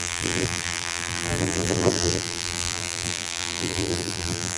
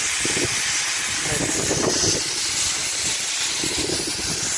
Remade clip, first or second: first